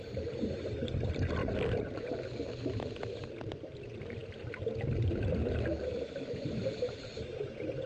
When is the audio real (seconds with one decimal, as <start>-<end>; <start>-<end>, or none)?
0.0-7.9